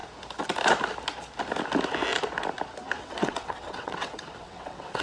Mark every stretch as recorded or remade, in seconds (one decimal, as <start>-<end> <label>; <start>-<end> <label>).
0.0-3.0 recorded; 3.0-5.0 remade